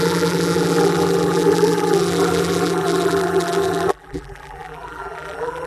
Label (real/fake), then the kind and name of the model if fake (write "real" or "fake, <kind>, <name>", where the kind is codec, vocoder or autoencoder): fake, vocoder, BigVGAN v2